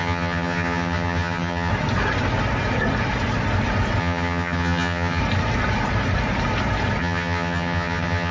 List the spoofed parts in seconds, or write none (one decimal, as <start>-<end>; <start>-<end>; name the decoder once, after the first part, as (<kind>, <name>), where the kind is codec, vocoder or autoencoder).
0.0-1.7 (vocoder, HiFi-GAN); 4.0-5.2; 7.0-8.3